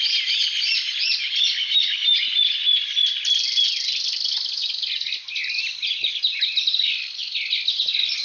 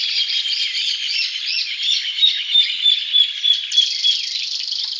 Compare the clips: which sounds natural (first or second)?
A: first